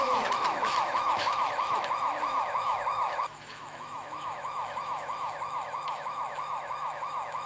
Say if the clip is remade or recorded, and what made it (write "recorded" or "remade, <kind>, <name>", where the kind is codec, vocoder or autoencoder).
remade, autoencoder, DAC-VAE